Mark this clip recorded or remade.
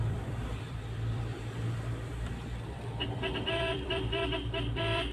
remade